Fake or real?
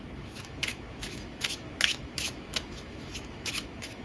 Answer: fake